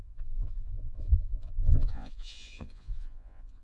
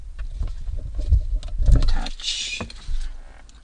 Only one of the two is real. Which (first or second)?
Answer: second